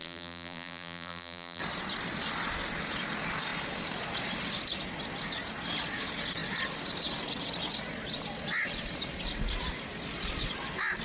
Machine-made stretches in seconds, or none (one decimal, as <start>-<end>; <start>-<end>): 0.0-1.6